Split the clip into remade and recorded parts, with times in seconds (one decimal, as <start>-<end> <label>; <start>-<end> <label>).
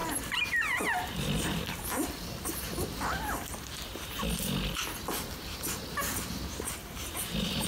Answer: 0.0-4.2 remade; 4.2-6.8 recorded; 6.8-7.7 remade